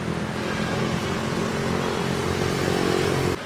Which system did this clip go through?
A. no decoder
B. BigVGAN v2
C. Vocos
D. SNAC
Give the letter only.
A